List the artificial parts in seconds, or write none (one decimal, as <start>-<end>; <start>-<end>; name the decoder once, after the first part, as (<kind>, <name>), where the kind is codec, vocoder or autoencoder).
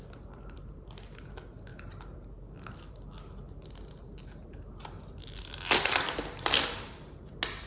none